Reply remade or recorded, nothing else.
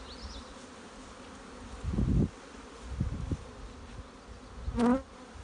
recorded